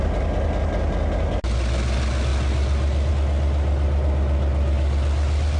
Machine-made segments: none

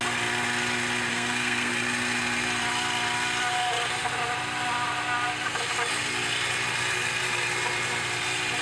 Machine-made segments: 1.1-1.7 (codec, SNAC)

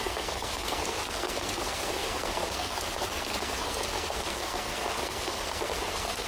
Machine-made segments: 0.0-6.3 (codec, SNAC)

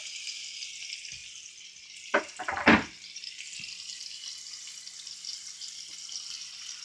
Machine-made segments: none